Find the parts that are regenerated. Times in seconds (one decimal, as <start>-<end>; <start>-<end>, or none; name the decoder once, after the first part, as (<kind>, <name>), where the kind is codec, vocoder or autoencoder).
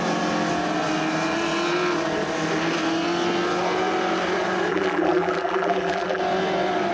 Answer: 4.7-6.2 (vocoder, BigVGAN v2)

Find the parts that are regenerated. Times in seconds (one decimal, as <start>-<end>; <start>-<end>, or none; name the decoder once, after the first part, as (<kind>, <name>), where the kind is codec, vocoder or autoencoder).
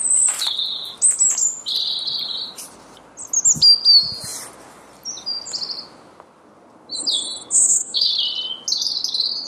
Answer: 7.5-8.1 (codec, SNAC)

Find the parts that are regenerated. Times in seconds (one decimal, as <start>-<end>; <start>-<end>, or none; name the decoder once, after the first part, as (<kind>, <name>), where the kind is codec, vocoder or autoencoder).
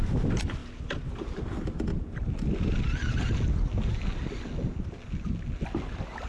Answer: none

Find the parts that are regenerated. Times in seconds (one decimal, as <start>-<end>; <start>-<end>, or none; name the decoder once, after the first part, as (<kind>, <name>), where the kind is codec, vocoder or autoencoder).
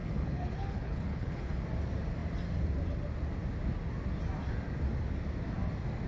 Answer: 0.0-1.6 (codec, HILCodec)